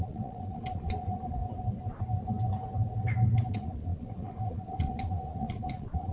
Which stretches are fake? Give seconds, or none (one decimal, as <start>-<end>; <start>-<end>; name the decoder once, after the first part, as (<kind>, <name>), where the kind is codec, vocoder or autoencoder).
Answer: 0.0-1.4 (vocoder, Vocos); 3.5-6.1